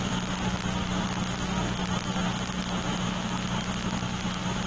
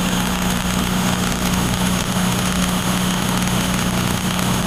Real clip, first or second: first